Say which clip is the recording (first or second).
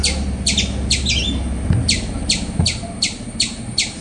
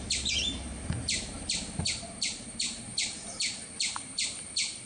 first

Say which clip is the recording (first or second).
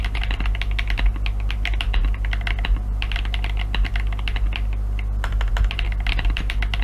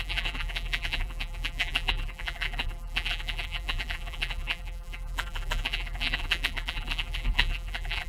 first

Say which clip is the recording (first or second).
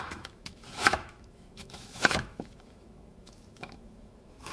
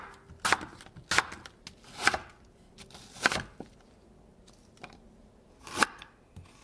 second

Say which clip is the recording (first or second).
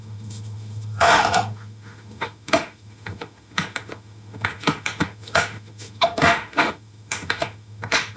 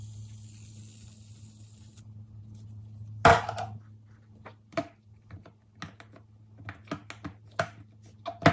second